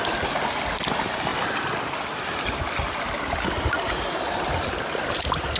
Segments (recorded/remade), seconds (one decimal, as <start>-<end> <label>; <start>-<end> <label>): 0.0-5.6 recorded